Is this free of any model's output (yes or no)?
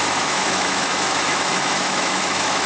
no